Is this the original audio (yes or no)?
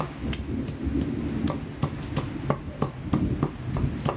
yes